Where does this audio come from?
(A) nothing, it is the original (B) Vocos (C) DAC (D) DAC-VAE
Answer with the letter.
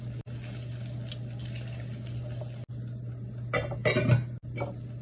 A